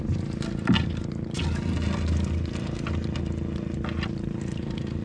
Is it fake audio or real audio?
real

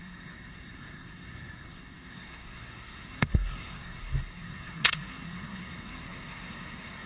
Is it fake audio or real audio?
fake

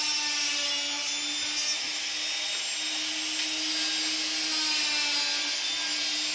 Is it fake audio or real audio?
real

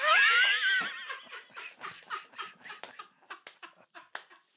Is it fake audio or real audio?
real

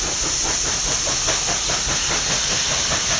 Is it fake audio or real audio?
real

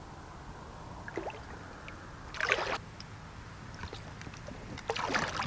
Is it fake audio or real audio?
real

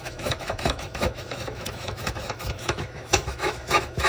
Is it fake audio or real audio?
fake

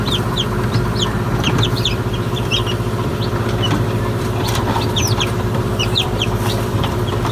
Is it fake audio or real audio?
fake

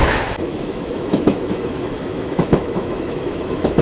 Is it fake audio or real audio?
fake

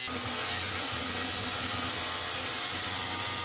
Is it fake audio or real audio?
real